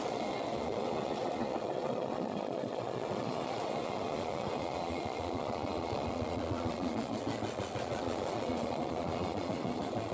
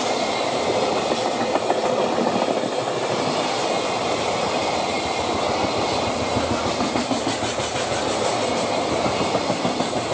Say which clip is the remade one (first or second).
first